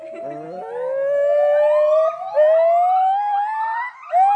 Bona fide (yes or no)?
yes